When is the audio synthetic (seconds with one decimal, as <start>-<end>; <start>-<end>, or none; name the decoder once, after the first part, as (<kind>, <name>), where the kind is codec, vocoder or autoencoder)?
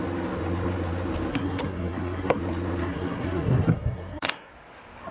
1.3-2.4 (codec, SNAC); 2.8-4.5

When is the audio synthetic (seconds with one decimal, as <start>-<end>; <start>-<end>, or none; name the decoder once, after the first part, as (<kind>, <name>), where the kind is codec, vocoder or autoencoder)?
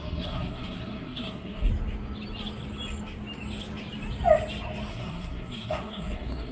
0.0-1.7 (codec, SNAC); 4.9-6.5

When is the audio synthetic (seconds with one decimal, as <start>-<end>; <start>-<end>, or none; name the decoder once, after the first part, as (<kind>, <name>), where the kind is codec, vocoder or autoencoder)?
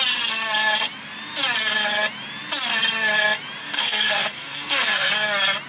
3.6-5.1 (codec, SNAC)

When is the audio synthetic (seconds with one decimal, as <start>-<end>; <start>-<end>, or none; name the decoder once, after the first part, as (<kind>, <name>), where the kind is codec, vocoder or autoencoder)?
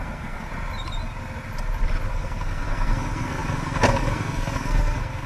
0.0-0.5 (codec, SNAC); 2.1-5.3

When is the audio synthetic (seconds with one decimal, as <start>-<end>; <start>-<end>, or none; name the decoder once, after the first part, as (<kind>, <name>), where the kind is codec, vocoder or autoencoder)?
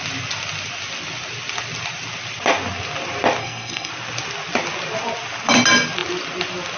3.4-3.9 (codec, SNAC)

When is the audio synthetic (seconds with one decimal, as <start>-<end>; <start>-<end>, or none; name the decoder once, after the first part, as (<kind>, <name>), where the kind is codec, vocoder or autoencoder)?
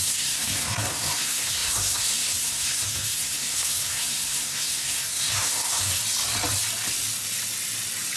0.0-6.0 (codec, SNAC)